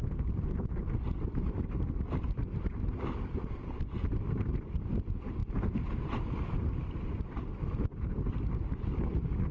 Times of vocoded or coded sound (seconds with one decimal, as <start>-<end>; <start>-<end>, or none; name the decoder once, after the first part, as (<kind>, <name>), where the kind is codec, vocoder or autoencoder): none